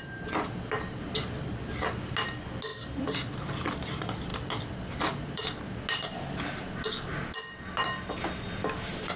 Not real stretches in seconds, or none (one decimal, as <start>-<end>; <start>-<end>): 2.7-3.4; 4.3-5.4; 7.1-8.1